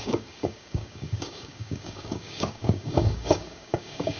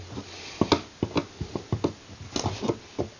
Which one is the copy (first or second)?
first